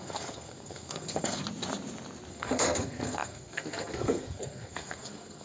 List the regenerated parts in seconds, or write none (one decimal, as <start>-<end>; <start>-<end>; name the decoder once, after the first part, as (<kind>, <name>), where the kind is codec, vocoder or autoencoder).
0.0-1.4 (codec, SNAC); 2.3-5.4